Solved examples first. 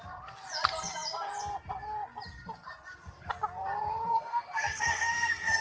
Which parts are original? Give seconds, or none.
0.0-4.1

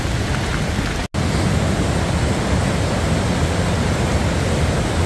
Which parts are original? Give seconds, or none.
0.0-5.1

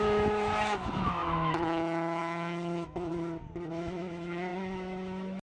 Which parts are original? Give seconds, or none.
3.1-3.7